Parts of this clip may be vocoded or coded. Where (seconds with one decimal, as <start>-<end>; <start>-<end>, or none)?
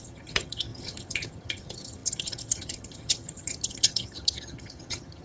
0.0-5.2